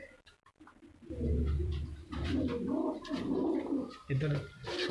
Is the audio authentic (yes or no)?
yes